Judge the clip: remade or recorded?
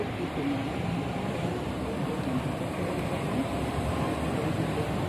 remade